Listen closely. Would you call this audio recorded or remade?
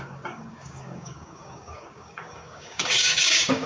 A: remade